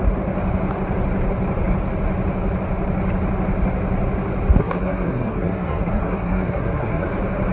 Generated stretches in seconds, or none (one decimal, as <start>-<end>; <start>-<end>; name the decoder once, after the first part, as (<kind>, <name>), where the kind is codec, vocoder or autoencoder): 4.6-7.1 (codec, SNAC)

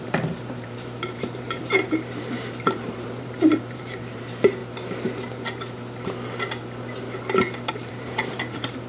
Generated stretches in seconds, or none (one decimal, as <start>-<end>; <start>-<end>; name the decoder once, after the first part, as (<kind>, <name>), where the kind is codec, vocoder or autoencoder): 0.0-4.6 (vocoder, BigVGAN v2); 7.7-8.9